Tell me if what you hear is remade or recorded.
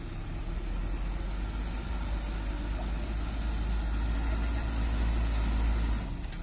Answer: recorded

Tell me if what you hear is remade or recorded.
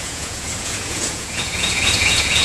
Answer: remade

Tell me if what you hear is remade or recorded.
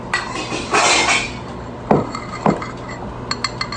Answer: recorded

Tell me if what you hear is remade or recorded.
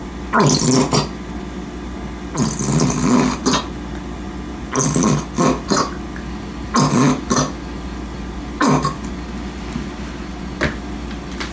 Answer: recorded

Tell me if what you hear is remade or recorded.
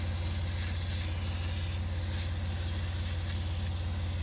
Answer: recorded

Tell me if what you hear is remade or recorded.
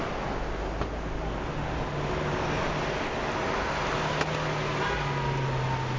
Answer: recorded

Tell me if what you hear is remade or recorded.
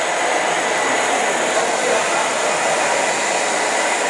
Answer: recorded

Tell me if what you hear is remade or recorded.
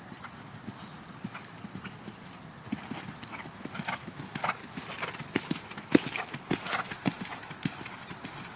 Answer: recorded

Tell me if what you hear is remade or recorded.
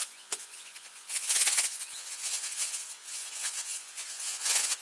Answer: remade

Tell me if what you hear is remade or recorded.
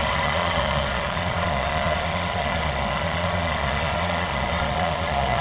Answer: remade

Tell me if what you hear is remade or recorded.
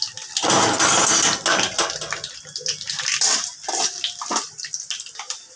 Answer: recorded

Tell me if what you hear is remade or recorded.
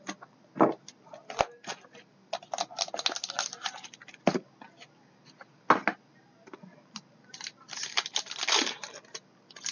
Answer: recorded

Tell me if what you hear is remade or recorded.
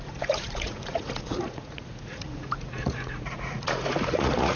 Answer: remade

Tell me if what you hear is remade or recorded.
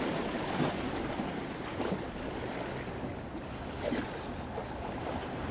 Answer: recorded